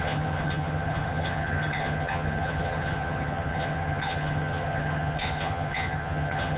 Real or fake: fake